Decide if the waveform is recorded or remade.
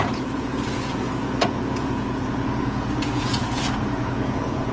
remade